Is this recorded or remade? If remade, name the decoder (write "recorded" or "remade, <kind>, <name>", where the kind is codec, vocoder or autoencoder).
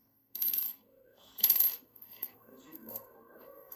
remade, codec, SNAC